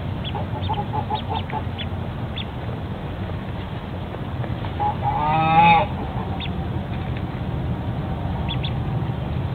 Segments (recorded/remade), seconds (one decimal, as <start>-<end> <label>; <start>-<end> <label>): 0.0-9.5 recorded